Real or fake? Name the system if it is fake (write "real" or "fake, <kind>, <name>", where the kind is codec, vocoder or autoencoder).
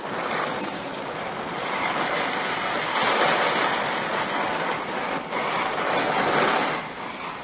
real